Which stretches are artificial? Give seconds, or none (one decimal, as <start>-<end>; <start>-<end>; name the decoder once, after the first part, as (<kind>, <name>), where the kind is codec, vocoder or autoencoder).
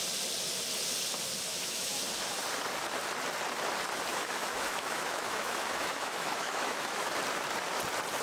1.5-2.0 (autoencoder, DAC-VAE); 4.1-7.1